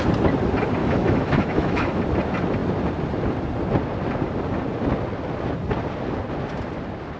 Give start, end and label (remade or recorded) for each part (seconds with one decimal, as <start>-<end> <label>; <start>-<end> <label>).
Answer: 0.0-0.8 recorded; 0.8-2.0 remade; 2.0-7.2 recorded